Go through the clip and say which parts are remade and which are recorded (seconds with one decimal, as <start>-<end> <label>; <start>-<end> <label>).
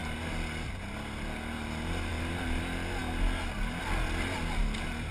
0.0-2.1 recorded; 2.1-2.6 remade; 2.6-5.1 recorded